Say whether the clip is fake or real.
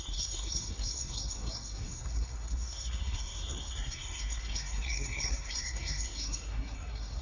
fake